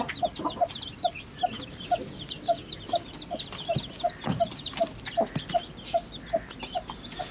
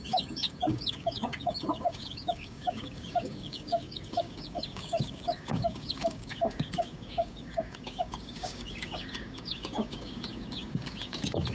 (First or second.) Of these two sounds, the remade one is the second